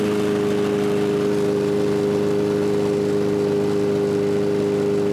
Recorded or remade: recorded